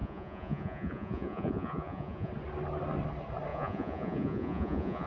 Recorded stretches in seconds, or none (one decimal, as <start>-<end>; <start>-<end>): 2.3-3.5